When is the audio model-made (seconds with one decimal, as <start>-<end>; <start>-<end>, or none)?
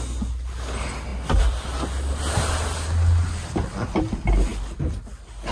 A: none